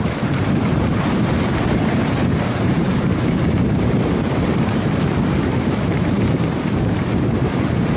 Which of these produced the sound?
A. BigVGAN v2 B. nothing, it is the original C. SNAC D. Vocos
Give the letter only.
A